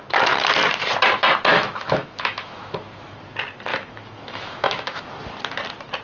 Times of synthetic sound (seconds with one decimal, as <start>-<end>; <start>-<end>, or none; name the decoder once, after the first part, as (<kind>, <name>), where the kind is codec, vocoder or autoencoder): 1.5-3.2 (autoencoder, DAC-VAE); 3.7-5.2